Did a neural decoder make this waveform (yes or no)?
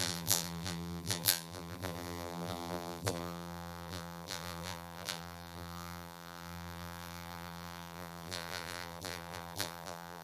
yes